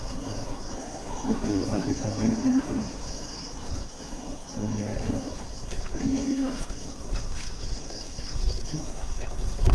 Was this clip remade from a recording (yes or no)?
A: yes